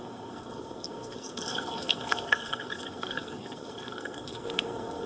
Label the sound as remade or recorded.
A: remade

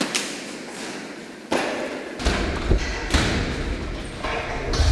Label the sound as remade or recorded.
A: recorded